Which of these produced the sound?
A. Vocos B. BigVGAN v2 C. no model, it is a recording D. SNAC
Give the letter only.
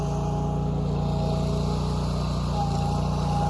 C